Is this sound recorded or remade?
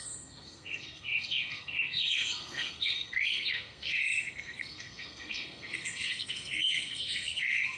remade